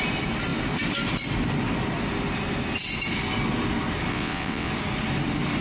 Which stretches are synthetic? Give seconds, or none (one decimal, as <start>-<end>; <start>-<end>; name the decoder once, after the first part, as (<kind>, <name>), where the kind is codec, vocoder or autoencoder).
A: 4.1-4.7 (vocoder, WaveNeXt)